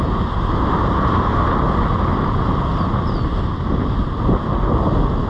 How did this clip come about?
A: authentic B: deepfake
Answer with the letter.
A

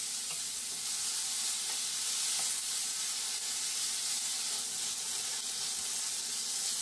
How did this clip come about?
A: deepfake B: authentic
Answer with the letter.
B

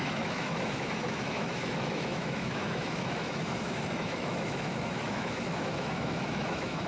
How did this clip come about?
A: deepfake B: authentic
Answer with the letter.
A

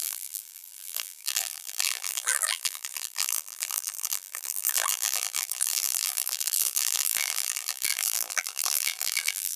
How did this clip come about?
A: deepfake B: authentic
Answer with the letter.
A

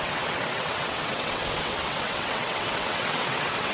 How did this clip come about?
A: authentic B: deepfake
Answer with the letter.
B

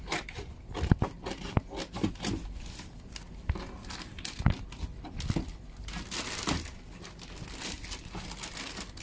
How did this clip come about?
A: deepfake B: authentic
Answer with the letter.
B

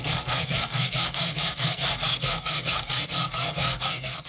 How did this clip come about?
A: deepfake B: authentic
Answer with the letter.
A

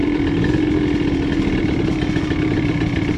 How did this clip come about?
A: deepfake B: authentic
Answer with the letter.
A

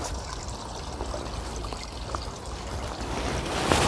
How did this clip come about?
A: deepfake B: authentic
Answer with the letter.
B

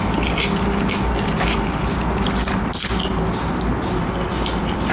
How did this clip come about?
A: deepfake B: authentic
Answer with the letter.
B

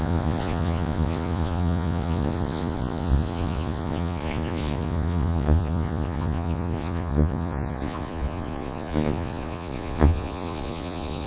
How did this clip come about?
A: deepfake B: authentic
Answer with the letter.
A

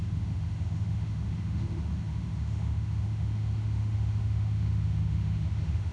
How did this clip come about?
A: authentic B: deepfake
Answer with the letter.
B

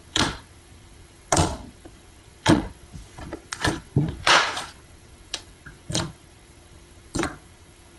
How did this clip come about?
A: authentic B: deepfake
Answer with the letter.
B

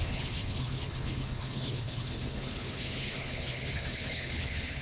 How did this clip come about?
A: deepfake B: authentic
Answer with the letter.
A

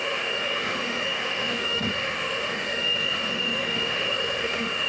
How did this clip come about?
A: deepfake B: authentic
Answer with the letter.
A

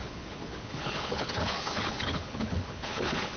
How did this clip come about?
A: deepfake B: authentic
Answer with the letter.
A